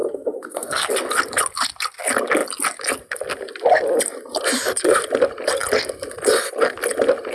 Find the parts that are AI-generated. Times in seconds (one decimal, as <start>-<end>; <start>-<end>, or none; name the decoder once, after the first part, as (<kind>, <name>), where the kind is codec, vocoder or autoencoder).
0.0-0.9 (codec, SNAC)